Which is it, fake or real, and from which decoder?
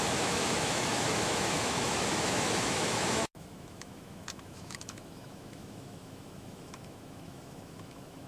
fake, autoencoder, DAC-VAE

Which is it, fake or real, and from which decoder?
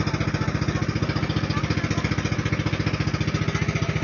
real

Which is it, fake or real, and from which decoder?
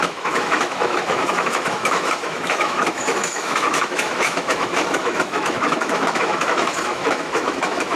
fake, autoencoder, DAC-VAE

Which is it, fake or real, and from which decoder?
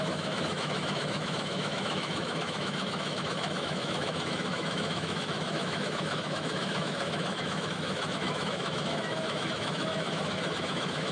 fake, autoencoder, DAC-VAE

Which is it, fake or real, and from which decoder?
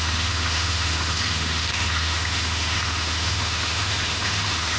fake, autoencoder, DAC-VAE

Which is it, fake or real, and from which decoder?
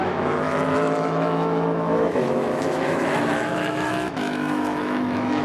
fake, autoencoder, DAC-VAE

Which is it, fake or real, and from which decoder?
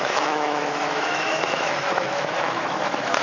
fake, autoencoder, DAC-VAE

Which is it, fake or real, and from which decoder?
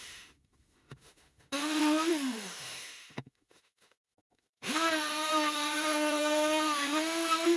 fake, autoencoder, DAC-VAE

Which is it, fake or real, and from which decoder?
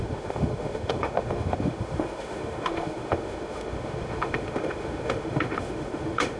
fake, autoencoder, DAC-VAE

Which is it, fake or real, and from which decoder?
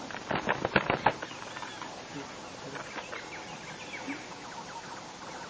real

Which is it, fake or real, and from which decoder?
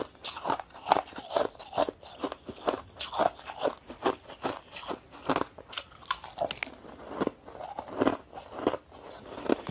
real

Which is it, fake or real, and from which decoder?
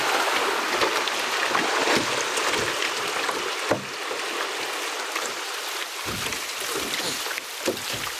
real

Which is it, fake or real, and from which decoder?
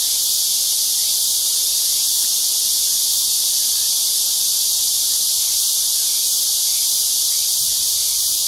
real